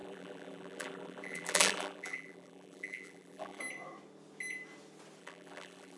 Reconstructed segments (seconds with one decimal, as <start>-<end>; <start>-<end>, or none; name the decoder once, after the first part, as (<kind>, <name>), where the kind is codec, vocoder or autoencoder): 0.0-3.6 (vocoder, BigVGAN v2); 5.2-6.0